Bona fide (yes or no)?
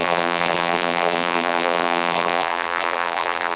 no